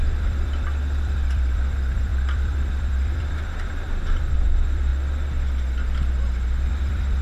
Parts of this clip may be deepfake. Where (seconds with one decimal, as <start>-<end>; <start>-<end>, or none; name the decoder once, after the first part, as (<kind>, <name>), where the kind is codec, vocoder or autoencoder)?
0.0-4.9 (vocoder, BigVGAN v2); 6.7-7.2